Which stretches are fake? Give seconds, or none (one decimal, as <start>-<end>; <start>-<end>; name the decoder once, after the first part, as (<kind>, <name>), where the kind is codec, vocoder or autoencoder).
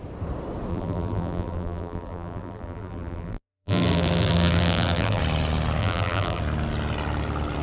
0.7-5.2 (vocoder, BigVGAN v2); 5.8-6.4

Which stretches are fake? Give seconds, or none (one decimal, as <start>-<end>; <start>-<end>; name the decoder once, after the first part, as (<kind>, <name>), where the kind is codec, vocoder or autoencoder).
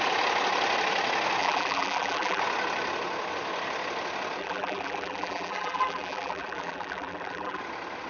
1.4-2.4 (vocoder, BigVGAN v2); 4.4-7.6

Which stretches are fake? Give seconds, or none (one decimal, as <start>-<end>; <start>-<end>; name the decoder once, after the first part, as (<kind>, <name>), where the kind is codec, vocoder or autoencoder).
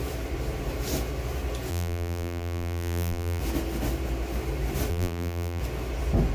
1.7-3.4 (vocoder, BigVGAN v2); 4.9-5.6